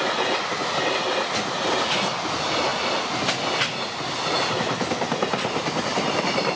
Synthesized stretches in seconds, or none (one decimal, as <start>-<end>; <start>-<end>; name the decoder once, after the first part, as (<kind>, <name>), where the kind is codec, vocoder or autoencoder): none